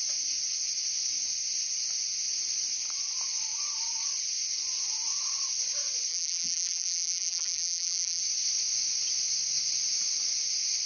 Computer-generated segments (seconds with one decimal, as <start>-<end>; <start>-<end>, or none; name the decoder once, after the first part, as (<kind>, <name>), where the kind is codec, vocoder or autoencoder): 6.1-8.2 (vocoder, BigVGAN v2)